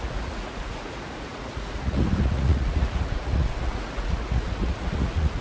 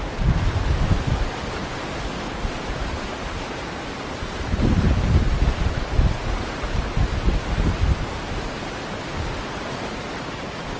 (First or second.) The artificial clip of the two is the first